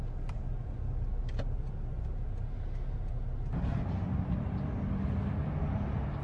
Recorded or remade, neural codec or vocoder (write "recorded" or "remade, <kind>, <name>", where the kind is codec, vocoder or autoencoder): recorded